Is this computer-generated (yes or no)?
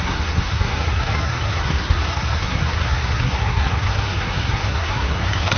yes